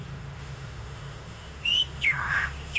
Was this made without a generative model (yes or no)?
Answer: no